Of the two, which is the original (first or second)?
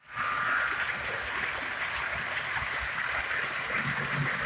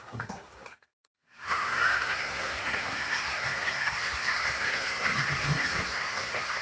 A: first